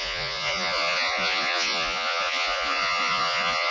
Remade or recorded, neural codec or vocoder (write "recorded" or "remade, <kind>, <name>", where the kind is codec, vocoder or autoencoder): remade, vocoder, Vocos